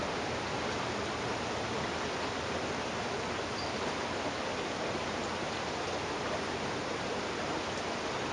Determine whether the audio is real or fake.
real